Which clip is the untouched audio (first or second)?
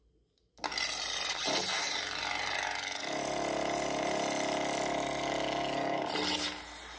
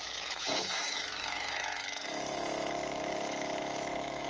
first